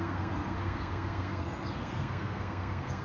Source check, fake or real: fake